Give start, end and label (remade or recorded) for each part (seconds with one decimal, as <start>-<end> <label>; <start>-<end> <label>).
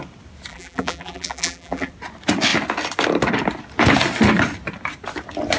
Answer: 0.0-0.5 recorded; 0.5-1.9 remade; 1.9-5.6 recorded